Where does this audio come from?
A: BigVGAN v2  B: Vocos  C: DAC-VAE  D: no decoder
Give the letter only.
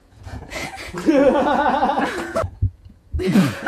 B